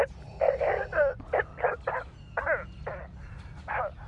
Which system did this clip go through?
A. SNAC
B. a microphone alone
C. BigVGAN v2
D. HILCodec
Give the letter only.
B